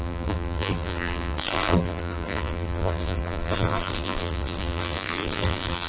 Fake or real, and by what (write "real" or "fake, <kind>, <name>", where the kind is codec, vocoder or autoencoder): fake, vocoder, BigVGAN v2